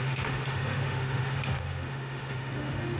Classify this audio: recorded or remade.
remade